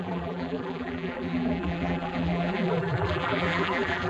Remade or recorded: remade